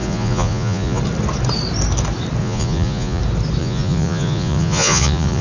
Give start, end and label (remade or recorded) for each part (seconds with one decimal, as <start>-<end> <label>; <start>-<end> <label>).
0.0-1.0 remade; 1.0-2.4 recorded; 2.4-3.2 remade; 3.2-3.6 recorded; 3.6-5.4 remade